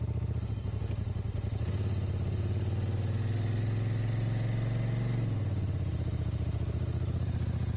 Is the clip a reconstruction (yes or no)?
no